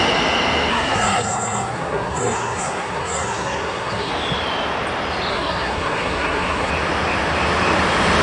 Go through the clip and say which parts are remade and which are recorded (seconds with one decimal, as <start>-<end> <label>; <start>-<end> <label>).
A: 0.0-0.7 recorded; 0.7-4.1 remade; 4.1-5.3 recorded; 5.3-6.7 remade; 6.7-8.2 recorded